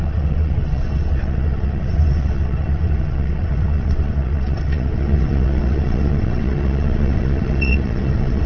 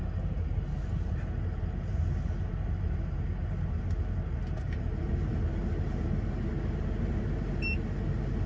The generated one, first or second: first